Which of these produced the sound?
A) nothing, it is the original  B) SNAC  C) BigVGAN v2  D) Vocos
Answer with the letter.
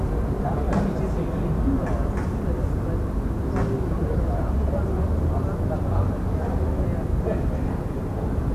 A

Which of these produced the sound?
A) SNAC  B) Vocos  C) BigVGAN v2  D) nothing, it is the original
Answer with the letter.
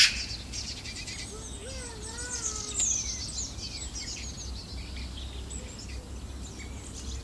D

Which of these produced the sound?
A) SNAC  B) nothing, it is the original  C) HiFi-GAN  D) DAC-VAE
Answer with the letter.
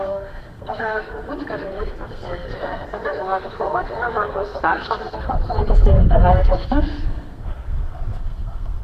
A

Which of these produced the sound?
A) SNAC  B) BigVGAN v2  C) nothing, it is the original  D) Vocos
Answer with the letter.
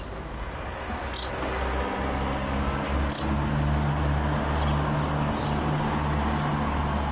C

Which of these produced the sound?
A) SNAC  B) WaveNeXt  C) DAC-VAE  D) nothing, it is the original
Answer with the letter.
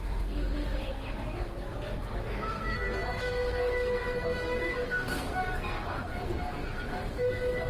A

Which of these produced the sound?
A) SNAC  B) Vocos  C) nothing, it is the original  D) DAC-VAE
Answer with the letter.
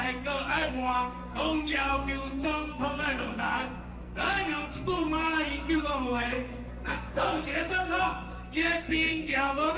A